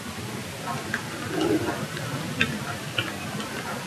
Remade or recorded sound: recorded